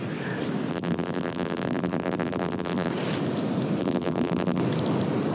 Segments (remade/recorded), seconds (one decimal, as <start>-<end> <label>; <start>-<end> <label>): 0.0-0.7 recorded; 0.7-2.9 remade; 2.9-3.8 recorded; 3.8-4.6 remade; 4.6-5.3 recorded